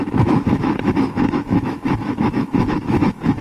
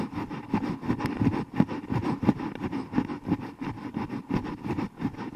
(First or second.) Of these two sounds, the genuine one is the second